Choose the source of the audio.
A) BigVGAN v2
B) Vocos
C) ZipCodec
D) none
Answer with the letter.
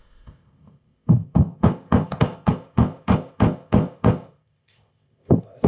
C